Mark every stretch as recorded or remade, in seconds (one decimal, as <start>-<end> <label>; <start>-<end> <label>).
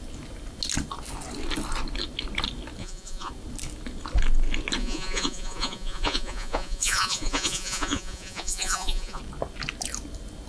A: 0.0-2.8 recorded; 2.8-3.3 remade; 3.3-4.8 recorded; 4.8-9.2 remade; 9.2-10.5 recorded